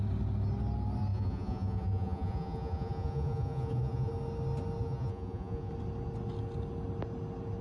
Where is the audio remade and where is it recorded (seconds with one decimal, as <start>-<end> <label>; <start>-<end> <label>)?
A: 0.0-1.1 recorded; 1.1-4.1 remade; 4.1-4.8 recorded; 4.8-5.7 remade; 5.7-7.6 recorded